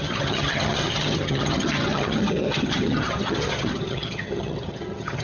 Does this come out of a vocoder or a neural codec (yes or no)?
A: yes